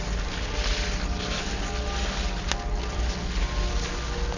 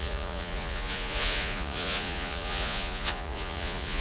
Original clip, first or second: first